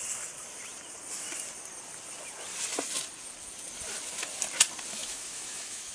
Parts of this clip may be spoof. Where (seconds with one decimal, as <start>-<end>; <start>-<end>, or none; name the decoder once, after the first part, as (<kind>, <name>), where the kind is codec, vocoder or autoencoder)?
5.0-5.9 (autoencoder, DAC-VAE)